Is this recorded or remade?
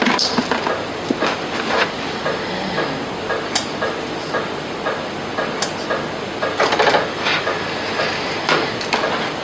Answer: recorded